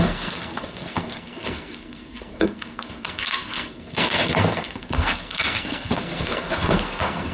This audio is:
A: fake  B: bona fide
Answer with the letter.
A